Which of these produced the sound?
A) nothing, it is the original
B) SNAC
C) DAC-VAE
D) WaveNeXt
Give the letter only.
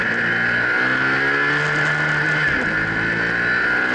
A